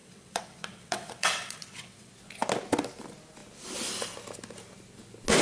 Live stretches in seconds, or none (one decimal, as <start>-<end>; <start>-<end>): 2.1-5.4